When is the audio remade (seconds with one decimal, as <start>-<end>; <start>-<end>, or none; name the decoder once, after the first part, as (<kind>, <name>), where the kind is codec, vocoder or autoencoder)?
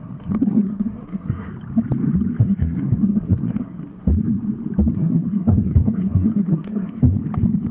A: 0.0-1.5 (codec, SNAC); 2.4-4.1; 4.9-7.2